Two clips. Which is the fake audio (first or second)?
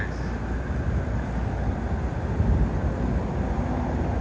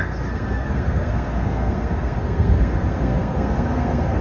second